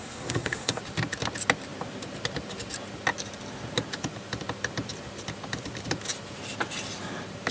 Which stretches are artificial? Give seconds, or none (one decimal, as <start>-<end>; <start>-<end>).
0.0-0.8